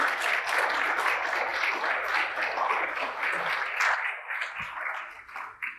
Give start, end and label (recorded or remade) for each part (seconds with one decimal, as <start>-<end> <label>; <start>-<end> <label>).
0.0-5.8 recorded